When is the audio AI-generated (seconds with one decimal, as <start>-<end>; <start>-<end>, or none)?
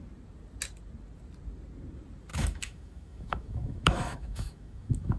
2.3-5.2